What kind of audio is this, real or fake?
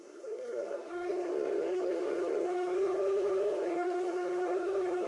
fake